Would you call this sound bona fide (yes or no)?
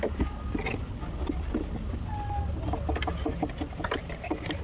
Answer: yes